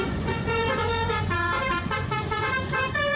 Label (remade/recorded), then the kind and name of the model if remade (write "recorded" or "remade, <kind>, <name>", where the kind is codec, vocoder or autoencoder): remade, vocoder, Vocos